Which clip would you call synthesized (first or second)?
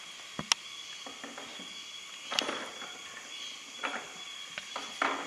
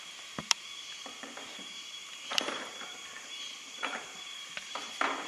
second